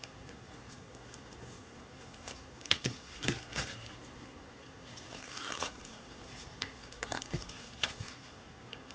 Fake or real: fake